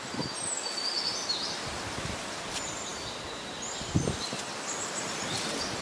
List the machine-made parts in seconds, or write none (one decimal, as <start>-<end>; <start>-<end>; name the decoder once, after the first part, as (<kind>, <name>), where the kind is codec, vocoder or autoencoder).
none